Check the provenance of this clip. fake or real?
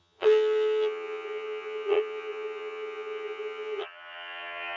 fake